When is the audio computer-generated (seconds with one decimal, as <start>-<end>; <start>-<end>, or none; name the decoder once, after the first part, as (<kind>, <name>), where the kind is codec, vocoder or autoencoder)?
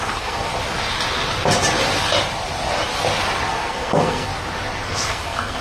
0.0-0.5 (codec, SNAC); 3.5-4.3; 4.8-5.6